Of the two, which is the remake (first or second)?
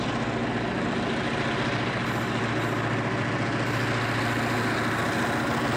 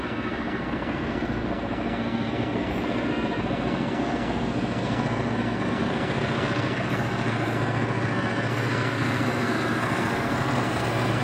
second